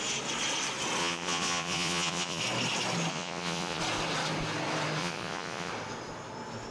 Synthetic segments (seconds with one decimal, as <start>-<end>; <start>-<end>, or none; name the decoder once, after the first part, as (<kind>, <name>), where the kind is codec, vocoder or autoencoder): 1.0-2.4 (vocoder, Vocos); 3.1-3.8; 5.0-5.7